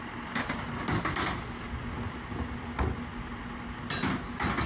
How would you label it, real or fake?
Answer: real